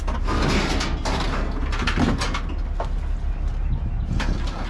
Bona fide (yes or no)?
yes